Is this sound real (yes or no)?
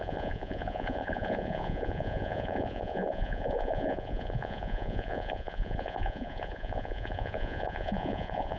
no